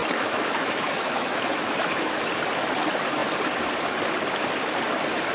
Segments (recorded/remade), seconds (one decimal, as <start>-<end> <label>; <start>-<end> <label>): 0.0-2.2 remade; 2.2-5.3 recorded